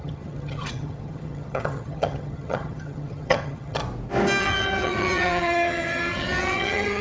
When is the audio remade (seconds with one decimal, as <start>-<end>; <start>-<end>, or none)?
0.0-3.8; 4.4-7.0